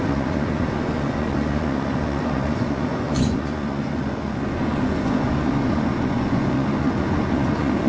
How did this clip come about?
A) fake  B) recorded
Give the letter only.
A